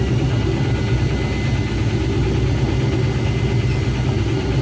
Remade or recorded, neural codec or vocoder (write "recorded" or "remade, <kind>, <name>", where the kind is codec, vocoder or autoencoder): recorded